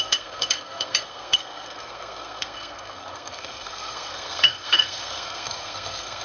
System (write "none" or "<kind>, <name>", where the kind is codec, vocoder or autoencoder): codec, SNAC